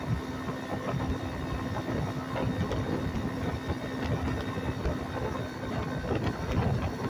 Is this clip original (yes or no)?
yes